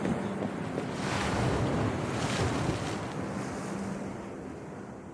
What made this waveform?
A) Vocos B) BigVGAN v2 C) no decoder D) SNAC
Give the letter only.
C